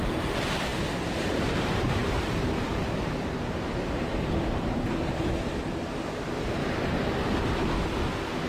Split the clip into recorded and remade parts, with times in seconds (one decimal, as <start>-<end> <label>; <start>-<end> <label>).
0.0-0.7 remade; 0.7-1.2 recorded; 1.2-6.6 remade; 6.6-8.5 recorded